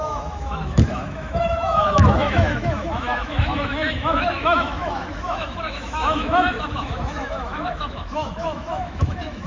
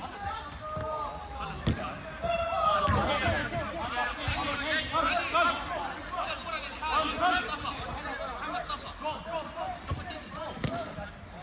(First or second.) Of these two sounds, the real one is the second